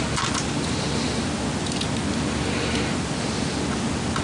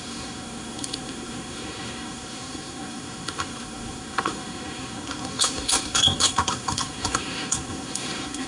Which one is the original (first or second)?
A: first